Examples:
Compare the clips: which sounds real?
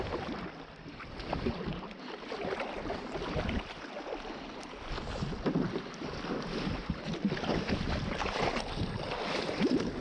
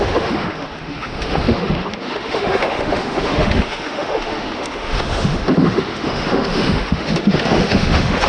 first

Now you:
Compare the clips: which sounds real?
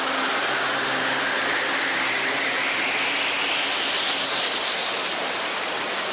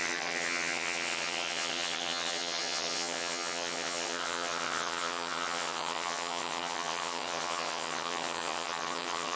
first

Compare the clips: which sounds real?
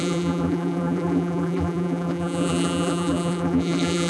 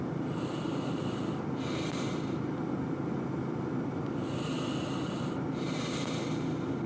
second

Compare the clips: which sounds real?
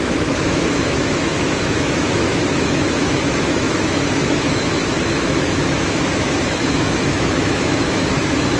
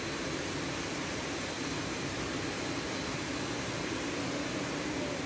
second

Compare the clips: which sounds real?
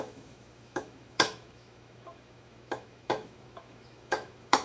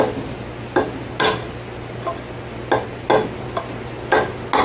second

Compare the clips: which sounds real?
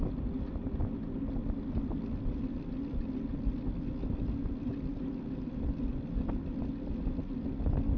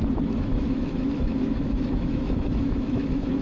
first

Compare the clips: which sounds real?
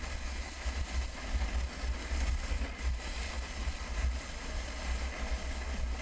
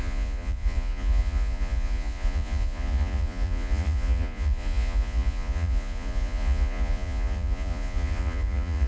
first